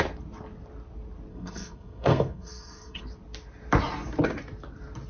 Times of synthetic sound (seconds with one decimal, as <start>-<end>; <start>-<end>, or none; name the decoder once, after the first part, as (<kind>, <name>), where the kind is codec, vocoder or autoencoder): 1.3-3.0 (codec, SNAC)